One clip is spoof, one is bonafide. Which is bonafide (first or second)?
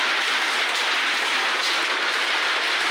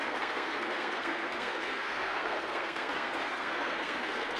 first